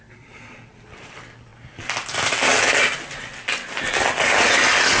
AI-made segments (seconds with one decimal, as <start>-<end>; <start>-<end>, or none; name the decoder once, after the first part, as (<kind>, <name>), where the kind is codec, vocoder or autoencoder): none